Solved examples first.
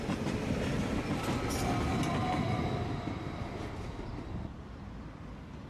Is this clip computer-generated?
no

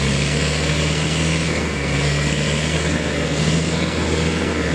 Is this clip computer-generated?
yes